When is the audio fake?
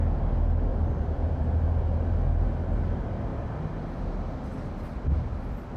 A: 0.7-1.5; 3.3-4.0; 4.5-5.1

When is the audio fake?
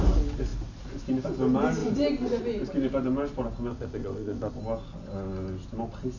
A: 3.7-4.6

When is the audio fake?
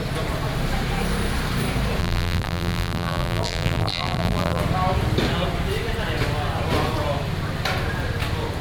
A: 2.0-4.6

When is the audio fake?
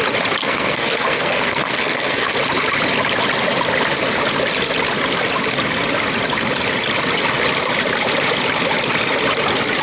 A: 0.4-2.3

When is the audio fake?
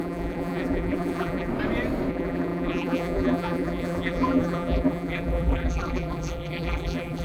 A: 0.0-1.5; 2.1-7.2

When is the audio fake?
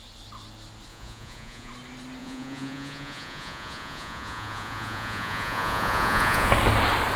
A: 0.9-1.7; 2.2-6.5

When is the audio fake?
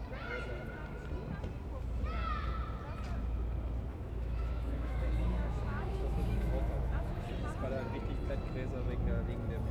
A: 3.9-7.3